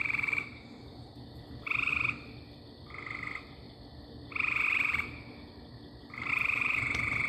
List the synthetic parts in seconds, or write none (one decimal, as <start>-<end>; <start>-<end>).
0.0-1.9; 6.3-7.3